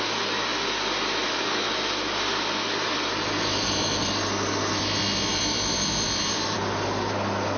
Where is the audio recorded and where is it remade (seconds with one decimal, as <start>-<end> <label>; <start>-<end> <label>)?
0.0-7.6 recorded

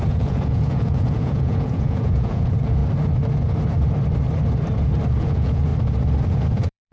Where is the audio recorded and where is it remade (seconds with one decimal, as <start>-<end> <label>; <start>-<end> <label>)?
0.0-2.8 remade; 2.8-5.2 recorded; 5.2-5.7 remade; 5.7-6.3 recorded; 6.3-6.9 remade

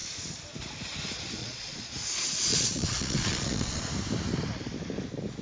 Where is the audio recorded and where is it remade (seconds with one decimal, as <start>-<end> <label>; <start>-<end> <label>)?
0.0-1.4 recorded; 1.4-1.9 remade; 1.9-2.5 recorded; 2.5-3.9 remade; 3.9-5.4 recorded

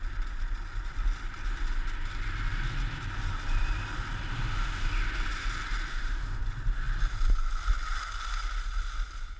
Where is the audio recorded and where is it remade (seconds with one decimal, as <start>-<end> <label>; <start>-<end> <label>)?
0.0-4.3 recorded; 4.3-4.9 remade; 4.9-5.9 recorded; 5.9-6.4 remade; 6.4-9.4 recorded

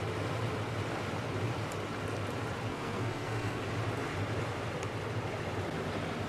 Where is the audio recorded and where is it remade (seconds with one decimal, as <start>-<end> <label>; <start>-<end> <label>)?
0.0-2.7 recorded; 2.7-3.6 remade; 3.6-6.3 recorded

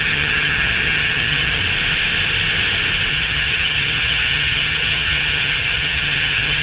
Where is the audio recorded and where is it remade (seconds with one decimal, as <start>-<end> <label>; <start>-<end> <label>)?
0.0-1.6 remade; 1.6-3.1 recorded; 3.1-6.6 remade

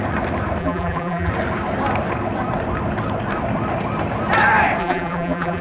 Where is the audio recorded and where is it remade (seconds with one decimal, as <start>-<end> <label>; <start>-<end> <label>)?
0.0-0.6 recorded; 0.6-1.3 remade; 1.3-4.8 recorded; 4.8-5.6 remade